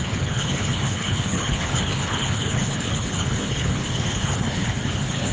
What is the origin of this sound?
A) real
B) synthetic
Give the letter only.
B